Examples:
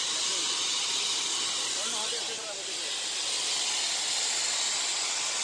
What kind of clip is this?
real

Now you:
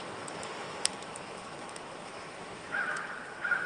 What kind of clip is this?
fake